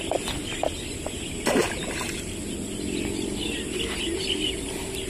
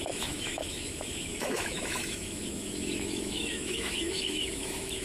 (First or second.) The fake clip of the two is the second